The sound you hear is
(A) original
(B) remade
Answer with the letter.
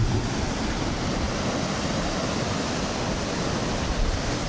A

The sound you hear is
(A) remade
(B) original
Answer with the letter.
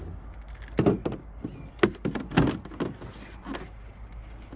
B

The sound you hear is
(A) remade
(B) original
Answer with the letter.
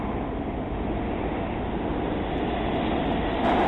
B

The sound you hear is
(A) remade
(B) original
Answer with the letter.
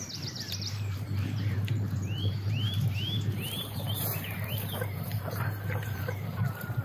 A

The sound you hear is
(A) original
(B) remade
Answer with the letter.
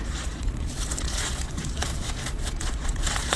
B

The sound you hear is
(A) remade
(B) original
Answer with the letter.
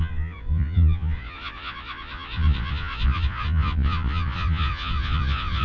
A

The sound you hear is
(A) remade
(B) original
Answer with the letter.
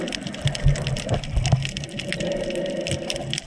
B